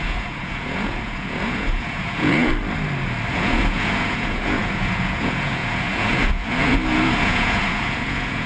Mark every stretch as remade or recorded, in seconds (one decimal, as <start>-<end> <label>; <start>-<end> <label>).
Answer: 0.0-2.5 remade; 2.5-3.3 recorded; 3.3-8.5 remade